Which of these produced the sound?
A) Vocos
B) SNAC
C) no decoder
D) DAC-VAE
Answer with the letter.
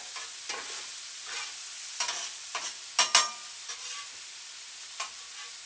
C